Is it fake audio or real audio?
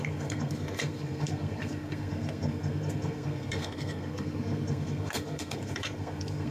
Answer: fake